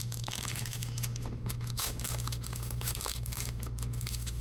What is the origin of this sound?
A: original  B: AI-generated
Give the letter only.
B